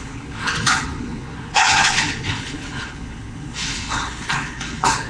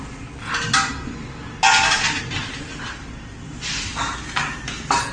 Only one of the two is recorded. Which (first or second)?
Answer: second